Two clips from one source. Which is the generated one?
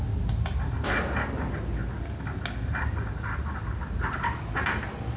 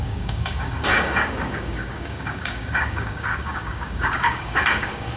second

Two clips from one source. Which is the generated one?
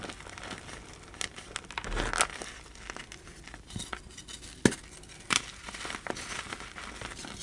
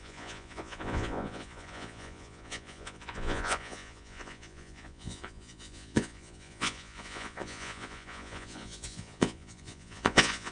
second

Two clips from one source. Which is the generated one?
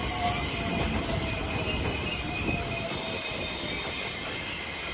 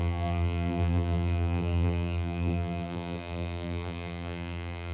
second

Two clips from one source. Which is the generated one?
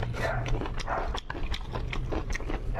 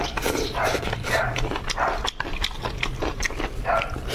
second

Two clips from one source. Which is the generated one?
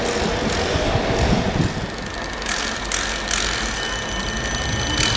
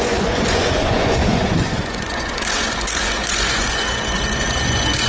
second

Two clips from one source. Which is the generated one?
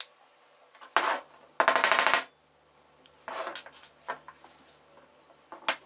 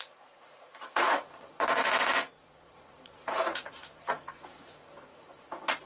second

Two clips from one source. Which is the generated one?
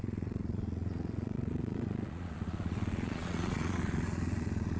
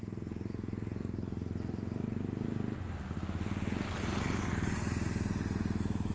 first